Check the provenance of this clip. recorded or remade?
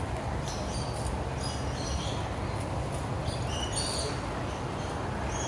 recorded